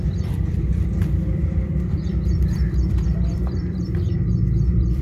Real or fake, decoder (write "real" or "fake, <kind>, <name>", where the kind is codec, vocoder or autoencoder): fake, vocoder, BigVGAN v2